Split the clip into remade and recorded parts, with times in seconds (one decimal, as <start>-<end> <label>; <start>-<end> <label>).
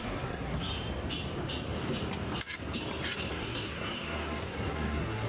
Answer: 0.0-0.7 remade; 0.7-3.3 recorded; 3.3-5.3 remade